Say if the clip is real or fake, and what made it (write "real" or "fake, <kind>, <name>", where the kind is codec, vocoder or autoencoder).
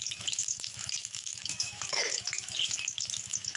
fake, autoencoder, DAC-VAE